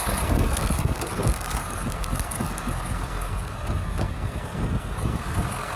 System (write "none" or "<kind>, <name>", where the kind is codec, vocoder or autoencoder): codec, SNAC